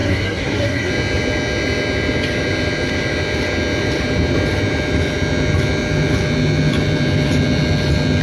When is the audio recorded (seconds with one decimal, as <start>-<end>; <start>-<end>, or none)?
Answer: 0.9-8.2